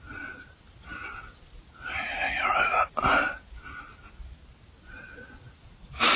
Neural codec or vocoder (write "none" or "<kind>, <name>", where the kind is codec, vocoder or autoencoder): none